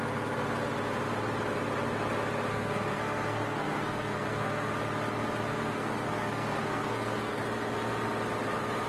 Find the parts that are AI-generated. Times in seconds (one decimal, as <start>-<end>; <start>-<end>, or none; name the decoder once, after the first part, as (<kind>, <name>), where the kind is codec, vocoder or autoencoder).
2.5-4.7 (codec, SNAC); 5.5-7.4

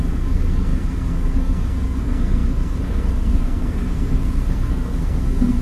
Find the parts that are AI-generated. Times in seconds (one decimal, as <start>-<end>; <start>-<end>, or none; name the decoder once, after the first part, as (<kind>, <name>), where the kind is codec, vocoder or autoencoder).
0.0-5.6 (codec, SNAC)

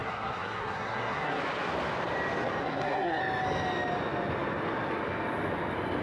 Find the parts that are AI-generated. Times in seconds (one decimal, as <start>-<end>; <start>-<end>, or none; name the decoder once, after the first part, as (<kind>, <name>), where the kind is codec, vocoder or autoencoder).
0.0-1.4 (codec, SNAC); 2.6-3.2